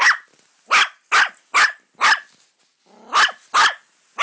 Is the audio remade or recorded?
recorded